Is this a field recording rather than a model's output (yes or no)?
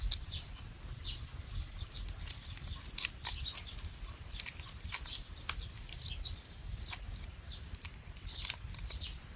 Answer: yes